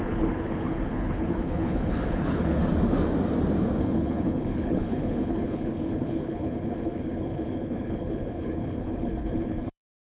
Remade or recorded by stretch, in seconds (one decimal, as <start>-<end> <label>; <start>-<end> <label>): 0.0-2.6 remade; 2.6-3.8 recorded; 3.8-10.1 remade